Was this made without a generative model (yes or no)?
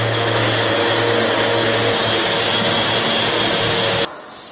yes